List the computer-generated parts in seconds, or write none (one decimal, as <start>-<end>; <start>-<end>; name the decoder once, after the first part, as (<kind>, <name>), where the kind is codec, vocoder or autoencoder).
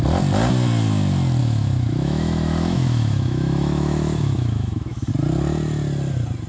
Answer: 1.4-5.1 (autoencoder, DAC-VAE)